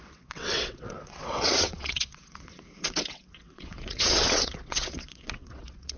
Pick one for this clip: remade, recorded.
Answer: remade